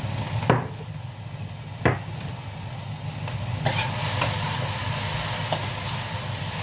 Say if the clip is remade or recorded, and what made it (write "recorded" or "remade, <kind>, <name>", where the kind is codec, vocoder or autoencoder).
recorded